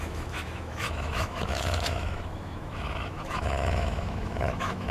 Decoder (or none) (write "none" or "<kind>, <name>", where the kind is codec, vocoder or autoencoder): autoencoder, DAC-VAE